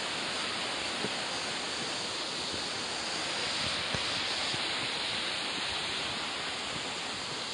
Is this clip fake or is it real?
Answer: real